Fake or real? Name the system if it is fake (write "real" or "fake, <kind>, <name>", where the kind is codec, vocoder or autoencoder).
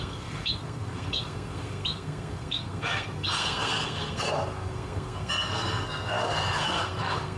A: fake, codec, SNAC